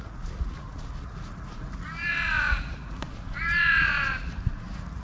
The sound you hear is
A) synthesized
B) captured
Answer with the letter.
A